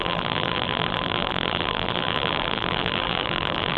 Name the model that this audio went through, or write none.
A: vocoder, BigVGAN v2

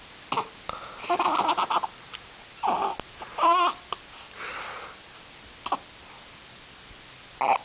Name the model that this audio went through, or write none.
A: none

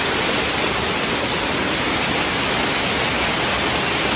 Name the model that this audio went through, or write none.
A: none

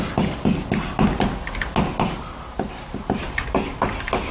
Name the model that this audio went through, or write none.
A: none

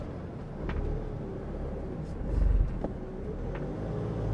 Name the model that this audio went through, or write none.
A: none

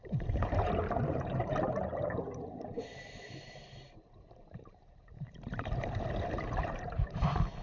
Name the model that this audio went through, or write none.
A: vocoder, BigVGAN v2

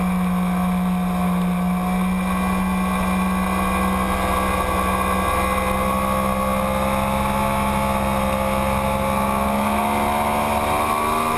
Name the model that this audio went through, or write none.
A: none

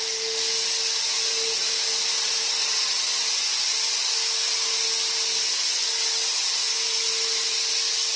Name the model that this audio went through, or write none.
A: none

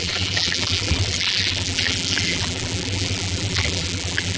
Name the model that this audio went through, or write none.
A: vocoder, BigVGAN v2